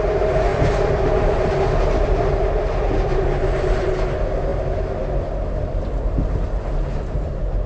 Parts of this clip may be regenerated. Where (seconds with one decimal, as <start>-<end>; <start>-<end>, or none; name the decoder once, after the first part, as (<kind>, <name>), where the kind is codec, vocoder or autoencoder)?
0.5-1.5 (vocoder, BigVGAN v2); 3.1-3.9

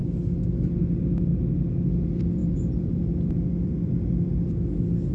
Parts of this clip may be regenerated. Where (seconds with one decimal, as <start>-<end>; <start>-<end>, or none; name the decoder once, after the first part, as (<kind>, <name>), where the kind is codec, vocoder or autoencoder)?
none

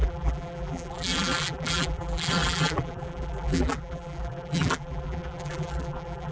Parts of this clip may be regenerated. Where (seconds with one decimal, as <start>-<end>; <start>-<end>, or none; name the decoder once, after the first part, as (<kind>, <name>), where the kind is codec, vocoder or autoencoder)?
0.0-6.3 (vocoder, BigVGAN v2)